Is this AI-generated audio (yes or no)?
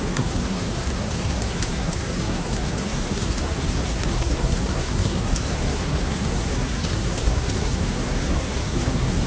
yes